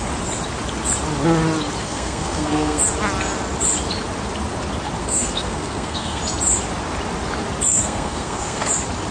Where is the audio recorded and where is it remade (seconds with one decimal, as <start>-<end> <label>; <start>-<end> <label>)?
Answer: 0.0-1.8 recorded; 1.8-2.8 remade; 2.8-5.0 recorded; 5.0-6.2 remade; 6.2-7.7 recorded; 7.7-8.7 remade; 8.7-9.1 recorded